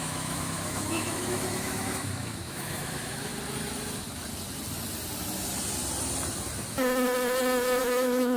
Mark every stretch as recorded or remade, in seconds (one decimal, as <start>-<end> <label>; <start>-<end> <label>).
0.0-3.3 remade; 3.3-7.8 recorded; 7.8-8.4 remade